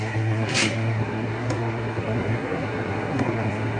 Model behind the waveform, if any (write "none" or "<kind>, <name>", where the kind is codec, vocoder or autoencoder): codec, SNAC